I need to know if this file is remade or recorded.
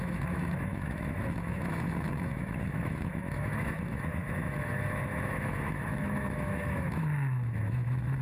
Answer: remade